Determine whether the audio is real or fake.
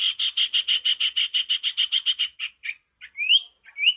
real